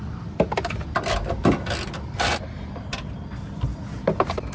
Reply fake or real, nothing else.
real